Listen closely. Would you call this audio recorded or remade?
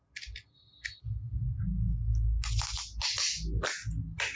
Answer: recorded